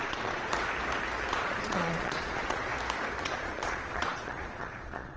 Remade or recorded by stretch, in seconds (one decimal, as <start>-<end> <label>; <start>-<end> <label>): 0.0-0.5 remade; 0.5-1.3 recorded; 1.3-2.7 remade; 2.7-3.2 recorded; 3.2-5.2 remade